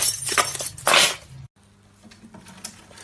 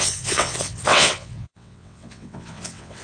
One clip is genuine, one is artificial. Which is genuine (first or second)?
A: first